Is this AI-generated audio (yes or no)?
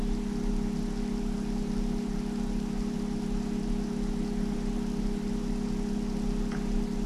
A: no